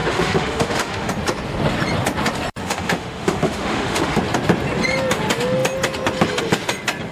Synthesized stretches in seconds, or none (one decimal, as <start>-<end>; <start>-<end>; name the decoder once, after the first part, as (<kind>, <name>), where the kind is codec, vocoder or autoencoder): 0.0-1.1 (autoencoder, DAC-VAE); 2.6-4.2